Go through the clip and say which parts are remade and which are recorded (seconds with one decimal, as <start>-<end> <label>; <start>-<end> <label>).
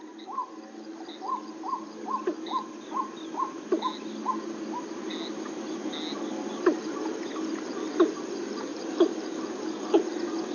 0.0-8.7 recorded; 8.7-9.4 remade; 9.4-10.5 recorded